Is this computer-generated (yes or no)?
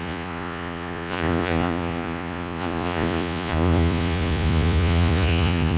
yes